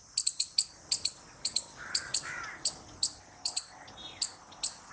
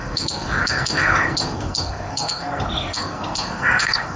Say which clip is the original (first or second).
first